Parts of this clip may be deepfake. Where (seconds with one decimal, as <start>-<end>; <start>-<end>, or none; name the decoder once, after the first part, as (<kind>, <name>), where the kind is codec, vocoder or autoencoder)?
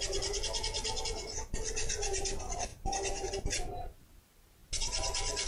2.7-3.3 (vocoder, BigVGAN v2)